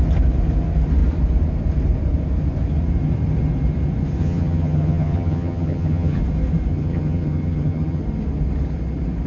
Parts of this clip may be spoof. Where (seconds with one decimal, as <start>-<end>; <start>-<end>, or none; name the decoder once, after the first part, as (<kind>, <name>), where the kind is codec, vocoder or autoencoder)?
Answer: 4.2-6.2 (vocoder, HiFi-GAN); 6.7-8.0